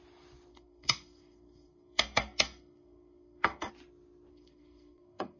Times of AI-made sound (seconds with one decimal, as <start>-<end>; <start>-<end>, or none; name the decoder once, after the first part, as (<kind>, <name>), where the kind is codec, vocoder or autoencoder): 0.5-3.7 (codec, SNAC); 4.3-5.4